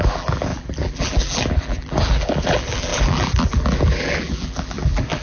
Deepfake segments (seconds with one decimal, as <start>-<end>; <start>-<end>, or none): 0.0-5.2